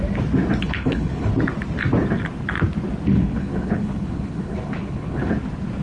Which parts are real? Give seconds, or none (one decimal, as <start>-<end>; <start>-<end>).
0.0-0.6; 1.3-3.1; 5.3-5.8